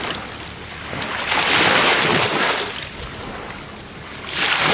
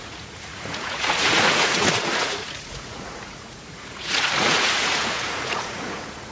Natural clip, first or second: first